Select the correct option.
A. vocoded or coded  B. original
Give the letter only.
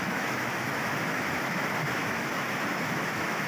A